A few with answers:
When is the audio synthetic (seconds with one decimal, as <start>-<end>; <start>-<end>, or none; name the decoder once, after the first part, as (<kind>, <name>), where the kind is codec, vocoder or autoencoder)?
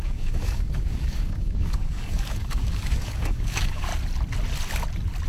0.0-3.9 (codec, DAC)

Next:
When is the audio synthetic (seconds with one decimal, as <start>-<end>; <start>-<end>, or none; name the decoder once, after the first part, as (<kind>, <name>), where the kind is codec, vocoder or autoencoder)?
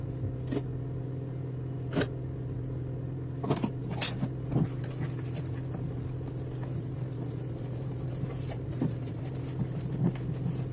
6.7-9.2 (vocoder, BigVGAN v2)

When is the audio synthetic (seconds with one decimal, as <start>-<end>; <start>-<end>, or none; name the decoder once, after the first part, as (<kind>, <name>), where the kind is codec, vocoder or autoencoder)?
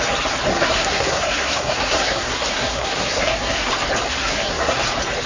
0.5-3.7 (codec, SNAC); 4.2-4.8